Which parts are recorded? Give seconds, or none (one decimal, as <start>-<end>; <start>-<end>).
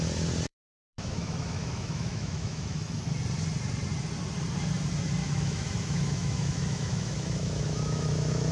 0.0-0.5; 3.0-5.2